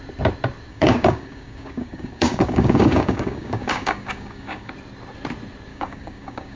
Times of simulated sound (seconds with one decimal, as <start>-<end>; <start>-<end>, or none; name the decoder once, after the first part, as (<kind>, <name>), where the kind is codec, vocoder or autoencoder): 0.7-4.7 (codec, DAC); 5.7-6.6